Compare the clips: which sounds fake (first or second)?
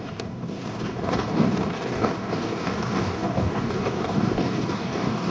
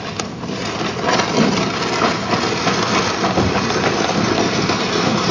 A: first